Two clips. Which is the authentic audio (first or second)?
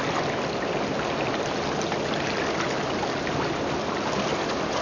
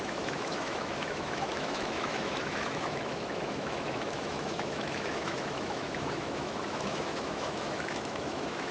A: first